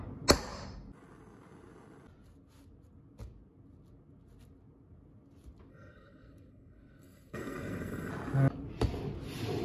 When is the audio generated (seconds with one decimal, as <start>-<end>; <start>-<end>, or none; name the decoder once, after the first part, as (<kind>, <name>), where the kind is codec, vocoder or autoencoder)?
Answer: 5.7-8.1 (codec, SNAC)